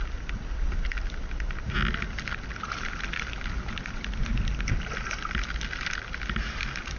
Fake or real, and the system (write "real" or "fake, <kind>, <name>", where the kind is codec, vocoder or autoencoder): real